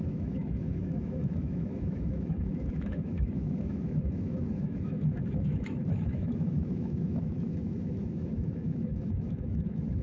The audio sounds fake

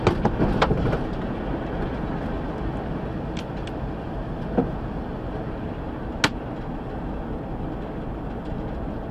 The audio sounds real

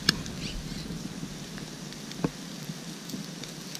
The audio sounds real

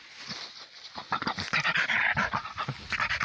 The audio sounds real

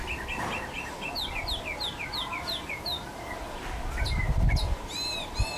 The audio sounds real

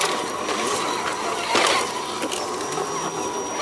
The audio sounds real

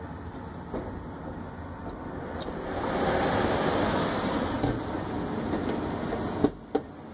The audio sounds real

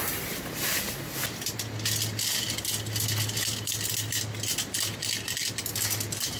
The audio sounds real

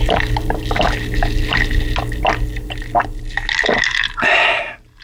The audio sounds real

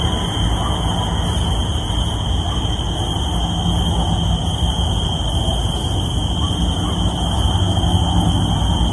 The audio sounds real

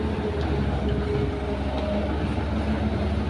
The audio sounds real